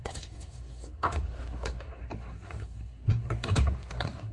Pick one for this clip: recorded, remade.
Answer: remade